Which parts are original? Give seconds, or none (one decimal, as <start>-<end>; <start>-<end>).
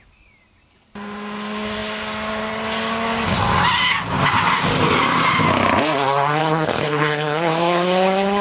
0.0-6.4